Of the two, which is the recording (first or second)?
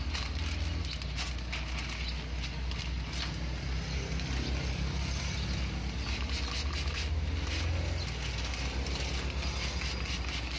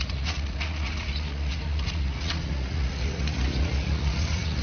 first